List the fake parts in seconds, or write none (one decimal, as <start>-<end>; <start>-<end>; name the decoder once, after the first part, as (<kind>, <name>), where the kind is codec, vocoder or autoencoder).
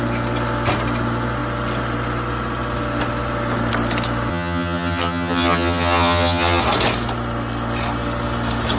4.3-6.6 (vocoder, HiFi-GAN)